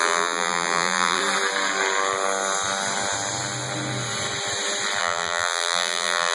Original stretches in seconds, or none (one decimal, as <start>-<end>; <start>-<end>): 1.2-5.0